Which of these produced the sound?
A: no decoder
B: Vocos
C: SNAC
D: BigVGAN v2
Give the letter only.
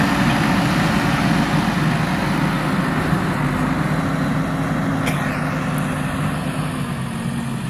A